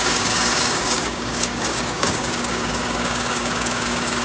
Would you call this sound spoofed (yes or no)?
yes